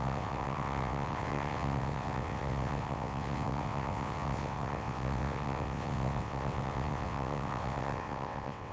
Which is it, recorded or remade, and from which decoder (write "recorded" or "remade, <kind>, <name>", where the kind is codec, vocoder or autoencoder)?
remade, vocoder, WaveNeXt